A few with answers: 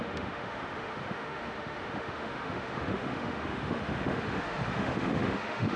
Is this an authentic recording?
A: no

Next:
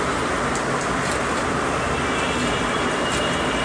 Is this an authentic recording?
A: yes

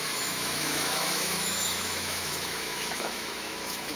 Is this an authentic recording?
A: no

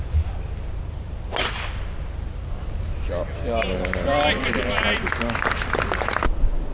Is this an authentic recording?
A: yes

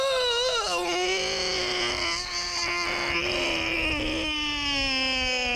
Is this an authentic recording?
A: yes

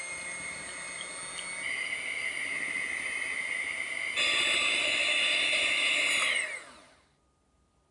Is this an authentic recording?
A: yes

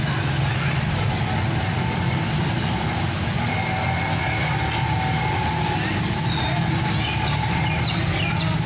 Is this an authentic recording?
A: yes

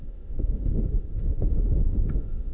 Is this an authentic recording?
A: no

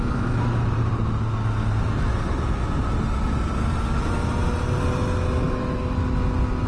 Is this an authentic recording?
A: yes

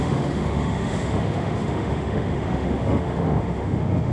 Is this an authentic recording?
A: no